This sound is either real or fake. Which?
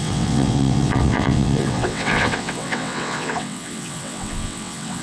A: fake